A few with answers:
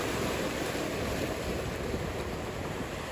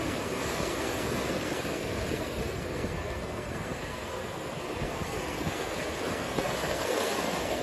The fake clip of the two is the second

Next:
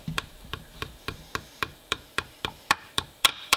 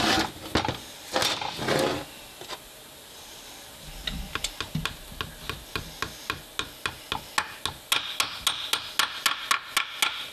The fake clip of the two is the first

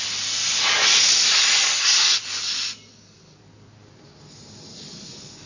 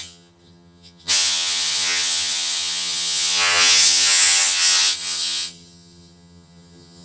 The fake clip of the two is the second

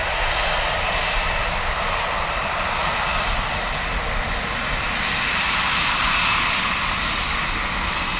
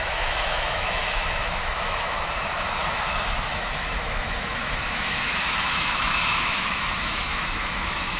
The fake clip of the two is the second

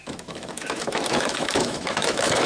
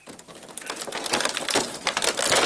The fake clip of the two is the first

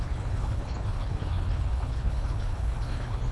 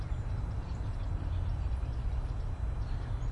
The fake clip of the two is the first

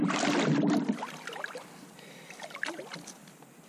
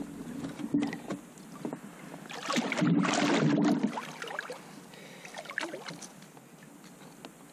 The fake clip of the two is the first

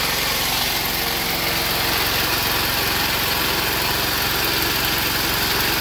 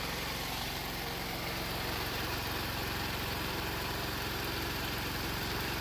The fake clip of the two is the second